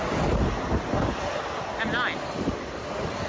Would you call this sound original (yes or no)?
yes